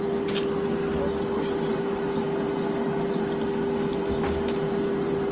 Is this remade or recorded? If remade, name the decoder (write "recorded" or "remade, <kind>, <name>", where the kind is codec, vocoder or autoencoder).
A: recorded